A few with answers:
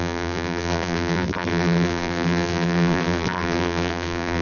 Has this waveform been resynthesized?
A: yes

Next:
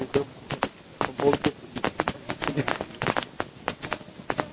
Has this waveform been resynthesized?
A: yes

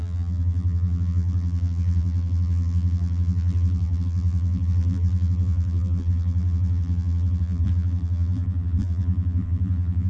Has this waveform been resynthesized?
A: yes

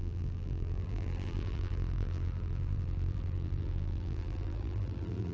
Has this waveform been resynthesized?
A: yes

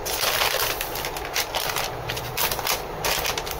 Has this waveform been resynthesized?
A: yes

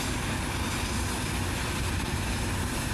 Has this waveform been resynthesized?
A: no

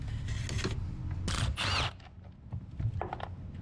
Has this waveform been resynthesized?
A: no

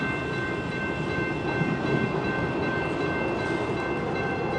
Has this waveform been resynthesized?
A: no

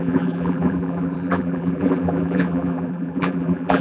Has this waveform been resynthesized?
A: yes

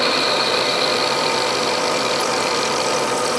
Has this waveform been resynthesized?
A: yes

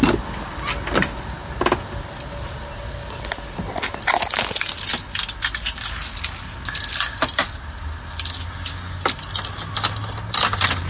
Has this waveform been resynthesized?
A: no